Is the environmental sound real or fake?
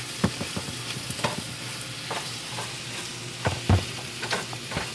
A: real